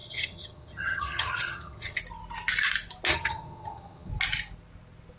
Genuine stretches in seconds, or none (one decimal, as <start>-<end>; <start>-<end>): 2.0-3.1; 4.1-5.2